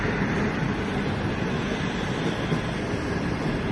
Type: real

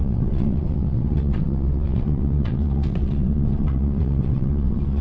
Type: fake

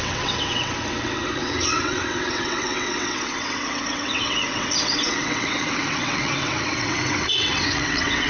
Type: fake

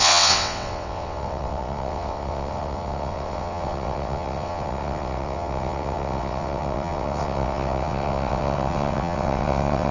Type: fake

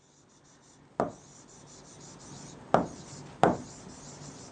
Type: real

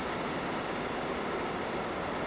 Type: real